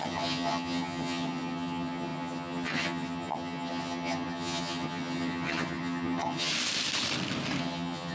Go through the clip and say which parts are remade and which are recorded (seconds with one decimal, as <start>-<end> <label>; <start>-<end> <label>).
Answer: 0.0-6.5 remade; 6.5-7.6 recorded; 7.6-8.1 remade